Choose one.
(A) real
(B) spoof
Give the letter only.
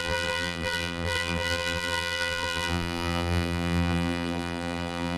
B